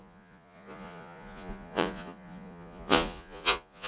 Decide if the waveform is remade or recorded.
remade